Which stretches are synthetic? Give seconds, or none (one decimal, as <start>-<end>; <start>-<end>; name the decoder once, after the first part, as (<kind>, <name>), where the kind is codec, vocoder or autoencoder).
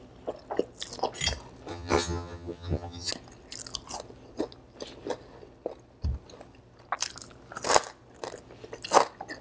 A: 1.7-3.1 (vocoder, HiFi-GAN)